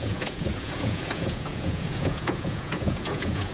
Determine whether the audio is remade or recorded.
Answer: remade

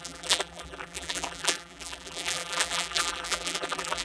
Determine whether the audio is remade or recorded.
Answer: remade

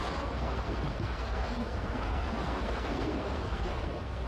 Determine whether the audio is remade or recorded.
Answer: remade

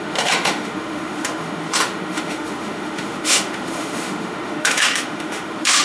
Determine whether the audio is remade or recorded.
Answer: remade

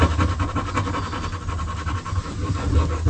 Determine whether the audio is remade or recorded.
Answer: recorded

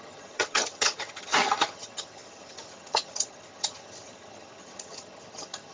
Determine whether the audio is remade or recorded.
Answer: remade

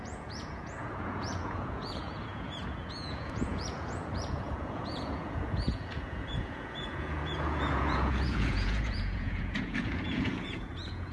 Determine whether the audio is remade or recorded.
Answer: remade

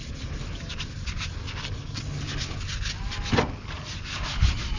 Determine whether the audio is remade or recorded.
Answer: recorded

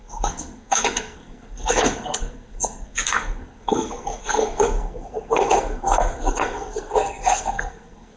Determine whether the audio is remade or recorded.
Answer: remade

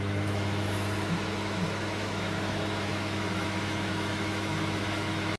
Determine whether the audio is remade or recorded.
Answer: remade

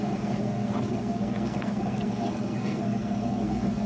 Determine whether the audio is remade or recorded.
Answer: remade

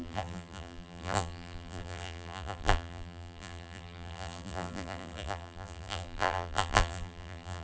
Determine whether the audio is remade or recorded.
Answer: remade